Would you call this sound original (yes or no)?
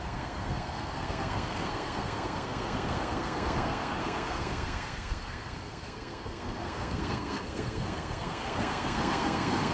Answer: no